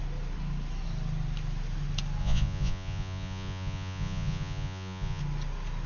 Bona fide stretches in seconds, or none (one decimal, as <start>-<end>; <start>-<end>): 0.0-2.2; 5.2-5.9